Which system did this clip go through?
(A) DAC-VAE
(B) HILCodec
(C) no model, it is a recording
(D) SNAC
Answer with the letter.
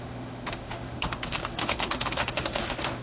A